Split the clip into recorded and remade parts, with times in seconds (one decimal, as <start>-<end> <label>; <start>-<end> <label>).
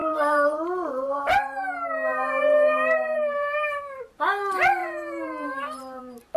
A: 0.0-3.8 remade; 3.8-4.8 recorded; 4.8-6.0 remade; 6.0-6.4 recorded